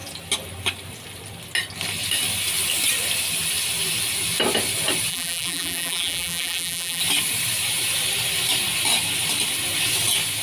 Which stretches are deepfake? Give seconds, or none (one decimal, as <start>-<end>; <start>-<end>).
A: 5.1-7.0